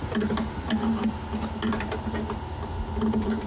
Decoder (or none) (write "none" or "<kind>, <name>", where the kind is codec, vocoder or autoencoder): none